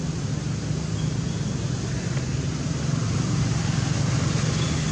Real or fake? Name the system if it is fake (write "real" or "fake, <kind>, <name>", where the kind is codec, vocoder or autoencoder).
real